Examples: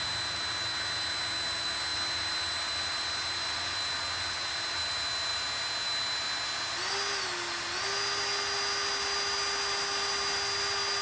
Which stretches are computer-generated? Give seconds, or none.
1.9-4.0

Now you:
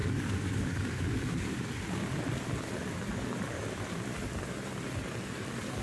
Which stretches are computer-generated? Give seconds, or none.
0.0-1.6

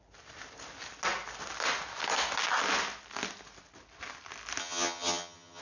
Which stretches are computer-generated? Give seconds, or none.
4.6-5.6

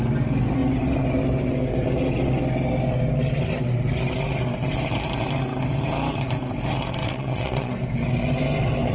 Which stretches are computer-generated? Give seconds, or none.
7.0-7.7

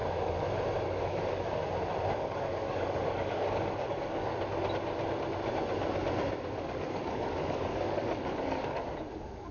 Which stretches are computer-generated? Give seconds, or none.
0.9-1.6; 2.2-4.3; 6.6-9.5

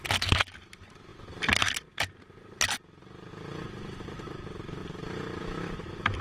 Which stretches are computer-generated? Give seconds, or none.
none

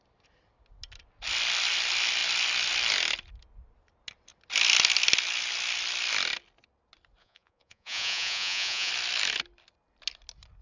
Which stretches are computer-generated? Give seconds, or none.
7.2-8.9

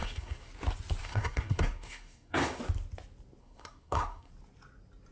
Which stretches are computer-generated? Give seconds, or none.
0.0-0.5; 1.0-2.6; 3.4-4.3